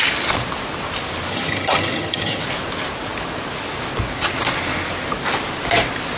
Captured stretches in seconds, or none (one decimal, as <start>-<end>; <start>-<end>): 0.0-1.3; 2.4-6.2